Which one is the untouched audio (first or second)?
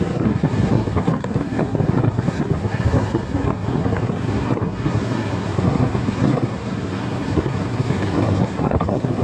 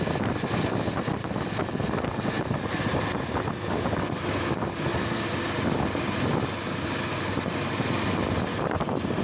second